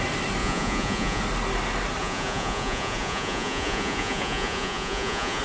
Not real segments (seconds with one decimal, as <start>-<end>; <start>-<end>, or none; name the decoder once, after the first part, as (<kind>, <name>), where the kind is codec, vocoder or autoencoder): 0.4-1.2 (vocoder, Vocos); 2.0-5.4